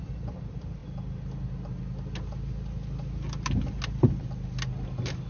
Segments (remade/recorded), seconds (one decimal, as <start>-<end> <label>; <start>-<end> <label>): 0.0-5.3 recorded